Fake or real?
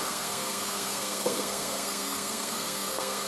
fake